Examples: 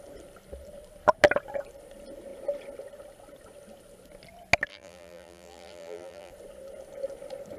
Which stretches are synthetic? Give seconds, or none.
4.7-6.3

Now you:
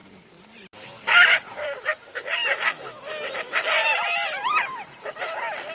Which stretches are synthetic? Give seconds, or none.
0.0-2.7; 3.8-5.3

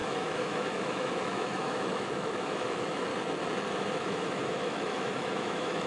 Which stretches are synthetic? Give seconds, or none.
0.0-3.1; 3.7-5.9

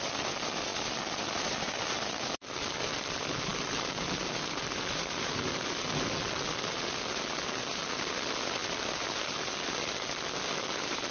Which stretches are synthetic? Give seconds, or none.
none

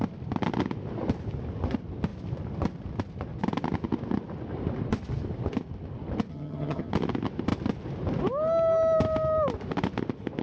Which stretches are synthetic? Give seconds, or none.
6.3-6.9

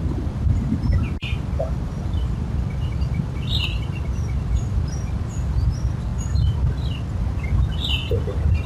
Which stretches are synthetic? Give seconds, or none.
0.0-1.2; 1.7-6.1; 7.2-8.7

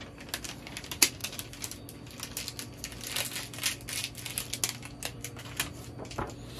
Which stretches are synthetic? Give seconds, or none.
none

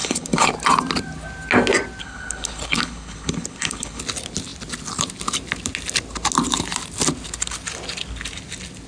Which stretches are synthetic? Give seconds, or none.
0.0-0.5; 2.0-4.0